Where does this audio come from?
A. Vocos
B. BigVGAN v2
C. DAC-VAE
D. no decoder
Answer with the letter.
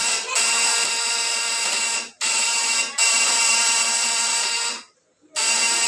D